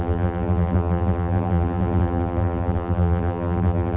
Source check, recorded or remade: remade